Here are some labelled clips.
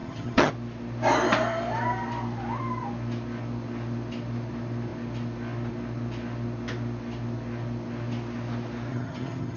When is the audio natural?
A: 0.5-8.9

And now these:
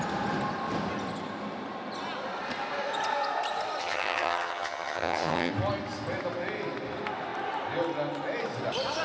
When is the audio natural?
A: 0.0-3.8; 5.5-9.0

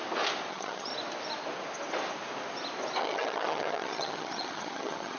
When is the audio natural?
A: 0.0-0.5; 0.9-3.0